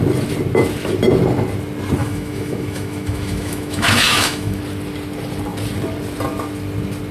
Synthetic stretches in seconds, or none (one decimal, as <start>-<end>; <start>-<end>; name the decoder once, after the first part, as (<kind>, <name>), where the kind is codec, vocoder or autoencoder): 2.0-4.6 (autoencoder, DAC-VAE)

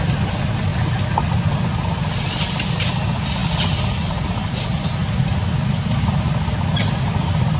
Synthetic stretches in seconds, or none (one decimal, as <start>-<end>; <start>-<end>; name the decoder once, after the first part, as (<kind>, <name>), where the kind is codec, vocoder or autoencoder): 3.4-7.6 (vocoder, BigVGAN v2)

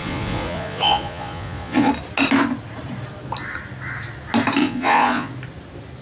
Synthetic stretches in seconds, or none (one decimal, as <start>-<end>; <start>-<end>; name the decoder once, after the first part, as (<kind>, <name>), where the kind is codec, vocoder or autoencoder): 0.0-1.9 (vocoder, Vocos); 4.6-5.3

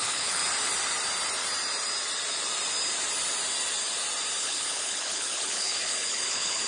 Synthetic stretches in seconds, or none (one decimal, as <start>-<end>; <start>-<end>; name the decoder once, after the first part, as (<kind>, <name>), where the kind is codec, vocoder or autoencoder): 0.0-0.4 (codec, HILCodec); 4.4-6.7

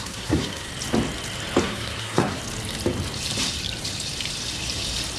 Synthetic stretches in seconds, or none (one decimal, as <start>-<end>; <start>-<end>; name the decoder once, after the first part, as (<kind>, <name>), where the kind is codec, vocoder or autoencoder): 0.0-0.7 (codec, SNAC); 1.6-2.4